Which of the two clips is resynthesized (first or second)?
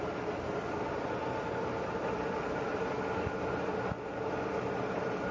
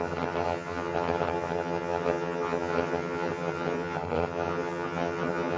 second